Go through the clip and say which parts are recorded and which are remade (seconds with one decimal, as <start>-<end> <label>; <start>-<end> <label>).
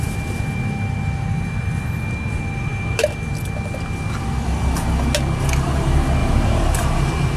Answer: 0.0-6.2 recorded; 6.2-7.4 remade